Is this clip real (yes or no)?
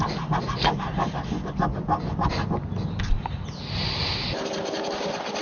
yes